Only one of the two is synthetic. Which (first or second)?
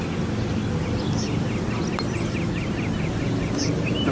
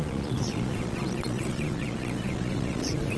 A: second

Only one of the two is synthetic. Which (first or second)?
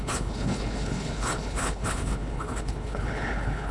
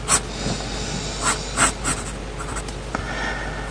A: first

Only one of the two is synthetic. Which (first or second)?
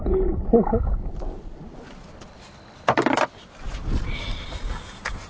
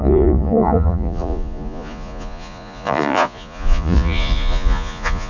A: second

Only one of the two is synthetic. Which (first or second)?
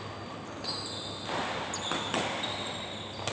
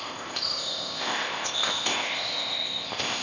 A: second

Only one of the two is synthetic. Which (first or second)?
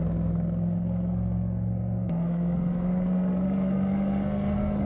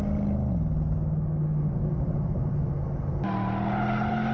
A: first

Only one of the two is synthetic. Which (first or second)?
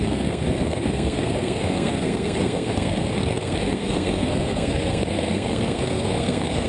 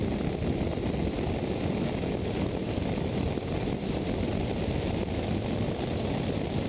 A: first